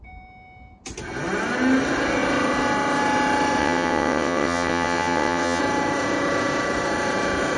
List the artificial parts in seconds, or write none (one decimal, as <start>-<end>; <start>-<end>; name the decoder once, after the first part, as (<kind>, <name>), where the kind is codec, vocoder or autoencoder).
3.6-5.6 (vocoder, WaveNeXt)